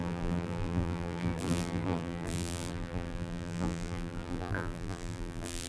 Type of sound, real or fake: fake